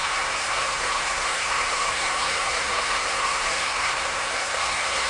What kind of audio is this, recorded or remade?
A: remade